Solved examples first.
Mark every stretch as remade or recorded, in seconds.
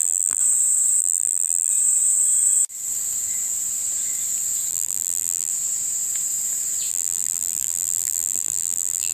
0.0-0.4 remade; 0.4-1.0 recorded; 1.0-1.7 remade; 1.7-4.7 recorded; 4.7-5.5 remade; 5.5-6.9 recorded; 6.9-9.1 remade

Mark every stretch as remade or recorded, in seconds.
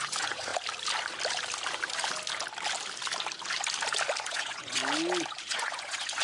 0.0-0.5 remade; 0.5-4.2 recorded; 4.2-4.8 remade; 4.8-5.3 recorded; 5.3-6.2 remade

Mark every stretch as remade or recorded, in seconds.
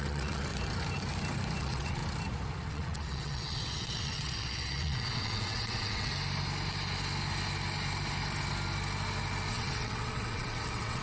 0.0-0.5 remade; 0.5-1.6 recorded; 1.6-2.0 remade; 2.0-2.7 recorded; 2.7-6.1 remade; 6.1-9.5 recorded; 9.5-11.0 remade